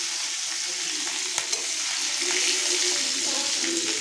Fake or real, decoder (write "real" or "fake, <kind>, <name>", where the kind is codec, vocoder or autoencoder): real